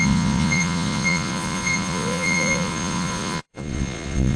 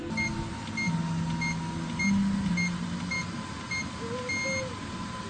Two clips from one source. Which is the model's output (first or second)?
first